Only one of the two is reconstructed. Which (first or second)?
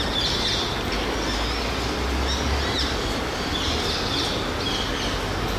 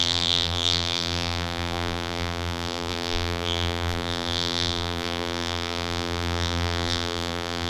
second